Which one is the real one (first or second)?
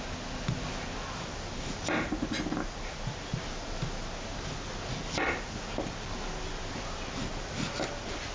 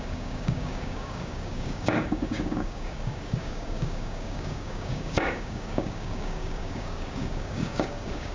first